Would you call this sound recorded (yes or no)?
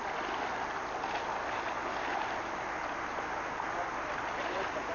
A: yes